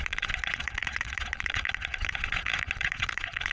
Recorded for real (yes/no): no